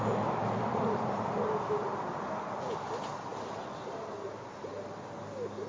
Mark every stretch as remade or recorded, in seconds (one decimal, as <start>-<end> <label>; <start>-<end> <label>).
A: 0.0-5.7 recorded